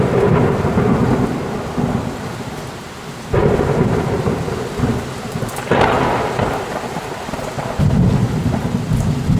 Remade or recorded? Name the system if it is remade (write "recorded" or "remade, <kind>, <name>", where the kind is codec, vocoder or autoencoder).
recorded